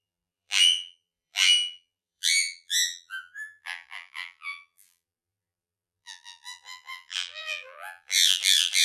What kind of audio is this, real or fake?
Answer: fake